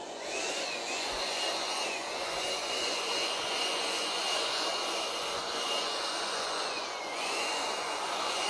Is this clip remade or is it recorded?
remade